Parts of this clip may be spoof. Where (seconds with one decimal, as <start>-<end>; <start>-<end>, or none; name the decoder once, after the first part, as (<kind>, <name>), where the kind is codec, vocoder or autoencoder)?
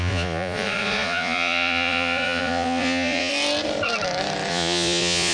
0.0-3.3 (vocoder, Vocos); 4.5-5.3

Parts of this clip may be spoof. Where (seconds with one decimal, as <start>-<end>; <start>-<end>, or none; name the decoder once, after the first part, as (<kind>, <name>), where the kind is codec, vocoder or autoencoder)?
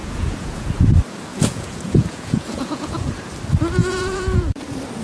0.0-0.7 (vocoder, Vocos); 1.3-3.1; 3.8-4.5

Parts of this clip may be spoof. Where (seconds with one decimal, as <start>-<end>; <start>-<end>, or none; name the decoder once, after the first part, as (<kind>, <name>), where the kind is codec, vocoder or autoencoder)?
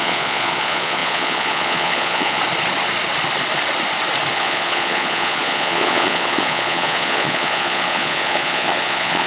0.0-2.4 (vocoder, Vocos); 4.3-9.3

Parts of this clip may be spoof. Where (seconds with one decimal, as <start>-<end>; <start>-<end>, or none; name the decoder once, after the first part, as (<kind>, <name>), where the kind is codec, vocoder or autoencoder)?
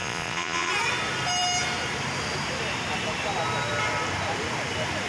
0.0-0.7 (vocoder, Vocos)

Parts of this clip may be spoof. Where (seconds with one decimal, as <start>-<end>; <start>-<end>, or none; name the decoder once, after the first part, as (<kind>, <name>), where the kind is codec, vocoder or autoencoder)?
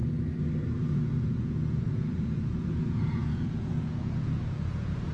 0.8-5.1 (vocoder, Vocos)